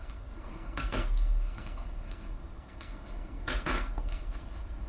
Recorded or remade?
remade